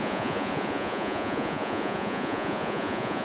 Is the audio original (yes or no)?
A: no